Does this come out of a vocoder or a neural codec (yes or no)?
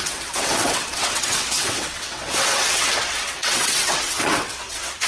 yes